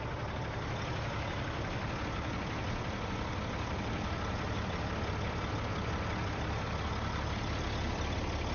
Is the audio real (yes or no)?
yes